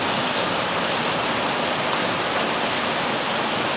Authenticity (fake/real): real